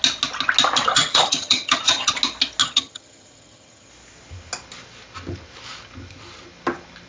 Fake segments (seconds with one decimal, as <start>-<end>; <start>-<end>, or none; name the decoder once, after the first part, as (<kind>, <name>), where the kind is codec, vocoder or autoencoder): 0.9-2.1 (vocoder, HiFi-GAN); 2.6-3.9